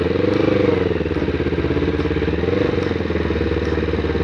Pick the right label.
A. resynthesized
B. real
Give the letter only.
B